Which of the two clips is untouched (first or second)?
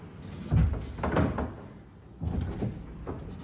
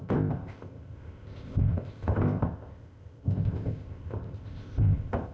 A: first